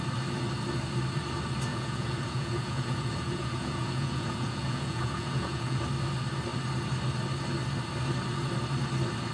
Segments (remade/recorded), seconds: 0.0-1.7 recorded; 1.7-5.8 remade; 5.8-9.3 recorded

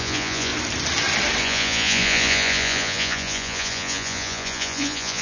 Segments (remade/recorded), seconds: 0.0-0.5 remade; 0.5-1.4 recorded; 1.4-5.2 remade

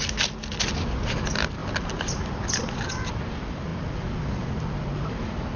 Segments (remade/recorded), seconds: 0.0-5.6 recorded

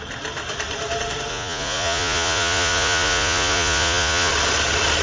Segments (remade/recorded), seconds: 0.0-1.3 recorded; 1.3-4.3 remade; 4.3-5.0 recorded

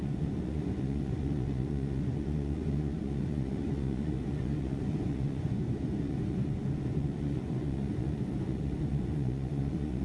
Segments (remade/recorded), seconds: 0.0-10.0 remade